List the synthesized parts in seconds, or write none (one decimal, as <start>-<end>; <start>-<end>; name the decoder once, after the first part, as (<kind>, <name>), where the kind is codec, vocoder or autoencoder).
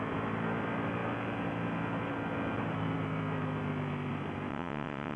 4.5-5.2 (vocoder, WaveNeXt)